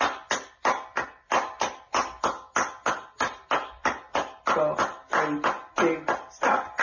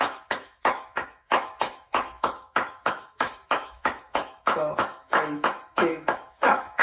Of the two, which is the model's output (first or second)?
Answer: second